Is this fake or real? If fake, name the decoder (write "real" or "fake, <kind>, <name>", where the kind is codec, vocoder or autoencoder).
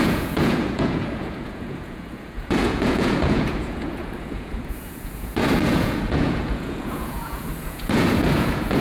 fake, vocoder, Vocos